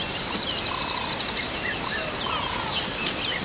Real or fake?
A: real